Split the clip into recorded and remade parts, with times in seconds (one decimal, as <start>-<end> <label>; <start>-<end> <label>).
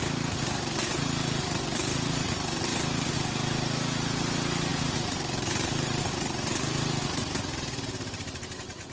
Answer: 0.0-8.9 remade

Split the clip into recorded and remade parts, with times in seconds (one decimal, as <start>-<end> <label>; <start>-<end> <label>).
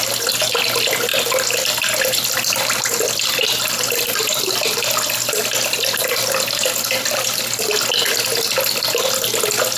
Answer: 0.0-9.8 recorded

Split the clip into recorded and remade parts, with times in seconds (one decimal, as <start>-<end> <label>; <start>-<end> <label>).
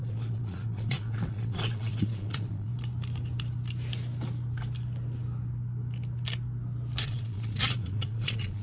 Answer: 0.0-2.7 remade; 2.7-7.0 recorded; 7.0-8.6 remade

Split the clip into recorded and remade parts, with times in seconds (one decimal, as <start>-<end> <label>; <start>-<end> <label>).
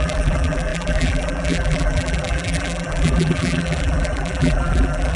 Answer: 0.0-5.2 remade